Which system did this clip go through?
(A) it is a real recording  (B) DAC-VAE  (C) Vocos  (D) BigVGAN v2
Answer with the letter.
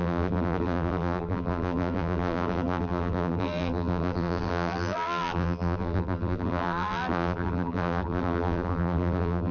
D